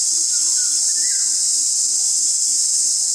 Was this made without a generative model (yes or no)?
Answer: yes